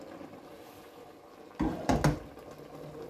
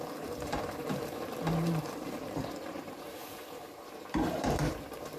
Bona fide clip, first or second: first